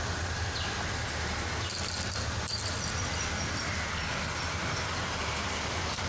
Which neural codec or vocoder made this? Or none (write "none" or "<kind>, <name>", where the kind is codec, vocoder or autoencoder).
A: none